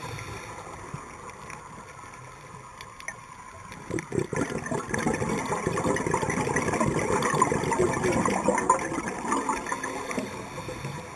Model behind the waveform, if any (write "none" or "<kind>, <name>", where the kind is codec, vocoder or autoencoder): none